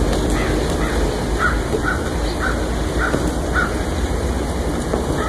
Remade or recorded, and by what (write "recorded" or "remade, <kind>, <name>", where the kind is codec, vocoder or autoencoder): recorded